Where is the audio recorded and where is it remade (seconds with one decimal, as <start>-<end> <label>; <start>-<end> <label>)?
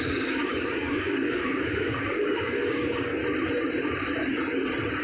0.0-3.2 remade; 3.2-5.0 recorded